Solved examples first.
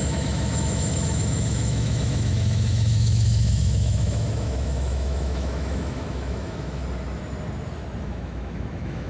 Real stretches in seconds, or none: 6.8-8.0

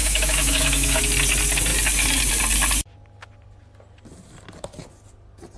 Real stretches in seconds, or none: 1.0-5.6